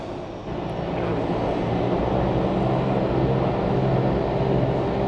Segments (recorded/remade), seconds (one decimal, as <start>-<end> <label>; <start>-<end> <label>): 0.0-5.1 recorded